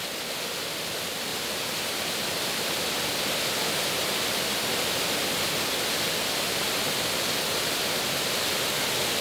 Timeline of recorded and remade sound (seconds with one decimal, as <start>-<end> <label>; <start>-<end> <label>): 0.0-9.2 recorded